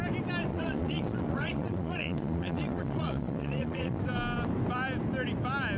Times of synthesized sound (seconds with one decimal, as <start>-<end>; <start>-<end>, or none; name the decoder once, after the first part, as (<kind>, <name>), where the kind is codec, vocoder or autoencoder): 0.5-4.0 (vocoder, Vocos)

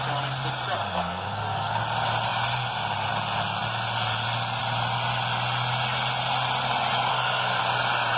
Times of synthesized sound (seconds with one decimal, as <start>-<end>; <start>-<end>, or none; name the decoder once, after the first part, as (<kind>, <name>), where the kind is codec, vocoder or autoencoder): 0.8-1.8 (codec, SNAC); 7.1-7.6

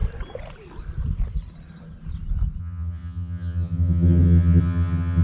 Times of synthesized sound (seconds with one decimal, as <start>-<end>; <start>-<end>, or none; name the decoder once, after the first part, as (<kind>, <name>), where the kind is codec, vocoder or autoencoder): 2.6-5.2 (vocoder, HiFi-GAN)